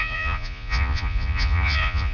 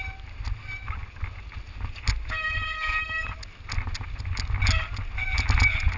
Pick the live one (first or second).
second